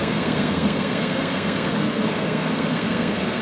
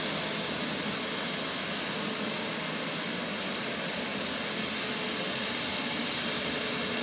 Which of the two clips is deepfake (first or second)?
first